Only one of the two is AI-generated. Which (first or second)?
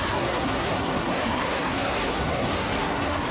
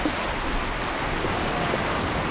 first